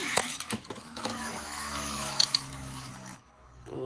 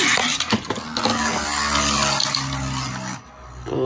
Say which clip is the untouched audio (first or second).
second